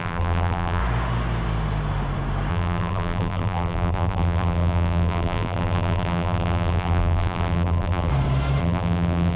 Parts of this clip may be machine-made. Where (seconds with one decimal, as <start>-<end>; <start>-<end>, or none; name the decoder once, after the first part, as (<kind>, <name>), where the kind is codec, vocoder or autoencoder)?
0.0-0.8 (vocoder, BigVGAN v2); 2.5-8.1; 8.6-9.4